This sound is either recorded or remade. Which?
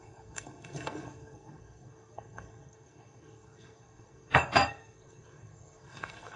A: remade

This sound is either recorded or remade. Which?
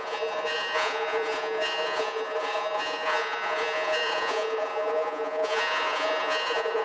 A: remade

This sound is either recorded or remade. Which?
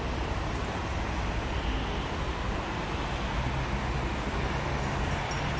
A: recorded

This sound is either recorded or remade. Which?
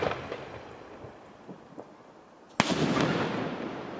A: recorded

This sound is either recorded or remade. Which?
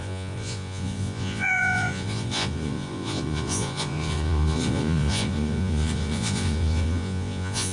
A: remade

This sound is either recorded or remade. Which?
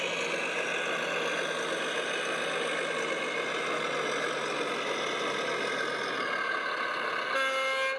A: recorded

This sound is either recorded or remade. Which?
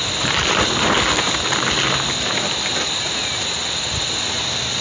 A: recorded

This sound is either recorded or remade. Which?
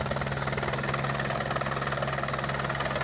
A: recorded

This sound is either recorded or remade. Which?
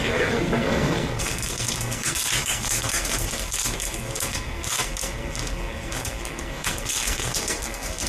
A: remade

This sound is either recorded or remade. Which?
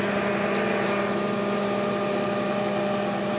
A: recorded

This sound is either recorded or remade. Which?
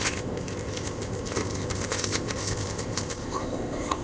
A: remade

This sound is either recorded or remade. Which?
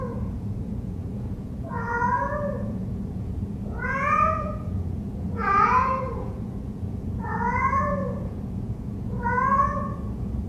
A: remade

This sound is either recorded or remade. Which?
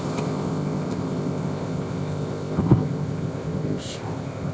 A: remade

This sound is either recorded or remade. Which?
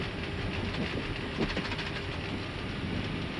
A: recorded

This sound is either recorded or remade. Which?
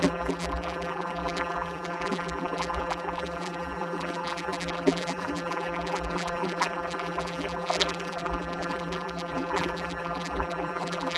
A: remade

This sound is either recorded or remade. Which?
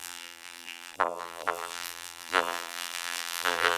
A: remade